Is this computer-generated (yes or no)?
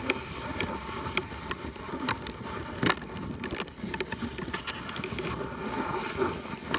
no